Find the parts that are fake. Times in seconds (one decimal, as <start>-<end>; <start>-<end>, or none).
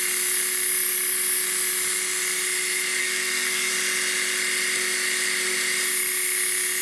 3.0-3.7